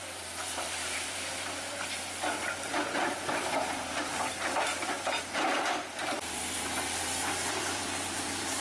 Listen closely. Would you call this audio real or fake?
fake